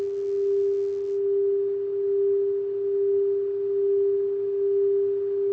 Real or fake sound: real